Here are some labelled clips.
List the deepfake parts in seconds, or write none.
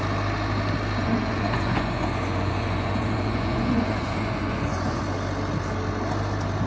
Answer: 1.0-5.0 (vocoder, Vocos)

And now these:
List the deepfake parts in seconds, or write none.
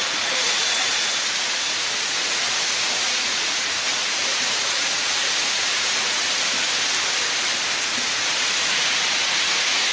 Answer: 0.0-6.2 (vocoder, Vocos); 7.8-9.9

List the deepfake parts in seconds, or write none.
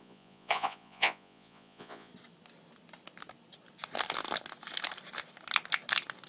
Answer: 0.0-2.1 (vocoder, Vocos)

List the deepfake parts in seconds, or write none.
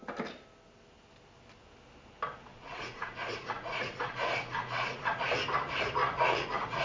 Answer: 2.5-5.2 (vocoder, Vocos); 6.0-6.8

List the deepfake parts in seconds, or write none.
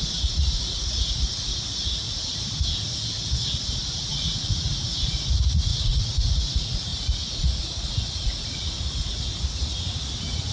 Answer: 0.0-1.5 (vocoder, Vocos); 4.1-10.5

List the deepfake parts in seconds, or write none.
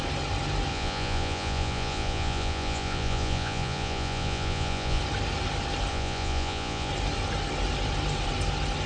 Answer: 0.7-5.0 (vocoder, Vocos); 5.9-6.9